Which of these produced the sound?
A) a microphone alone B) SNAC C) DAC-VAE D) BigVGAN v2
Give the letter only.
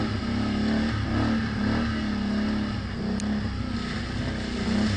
A